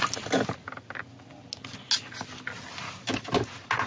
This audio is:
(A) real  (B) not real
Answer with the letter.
A